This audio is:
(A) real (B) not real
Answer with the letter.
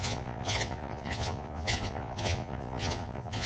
B